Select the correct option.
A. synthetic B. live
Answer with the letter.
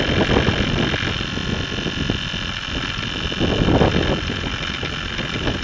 B